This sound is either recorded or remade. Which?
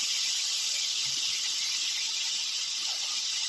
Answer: recorded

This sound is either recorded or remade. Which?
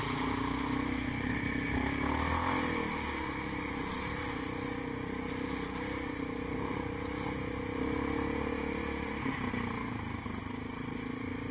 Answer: recorded